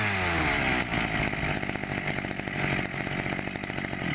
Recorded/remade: remade